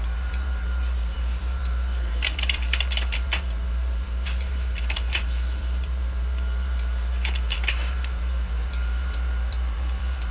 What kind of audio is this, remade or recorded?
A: remade